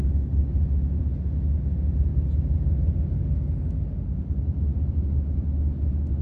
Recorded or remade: recorded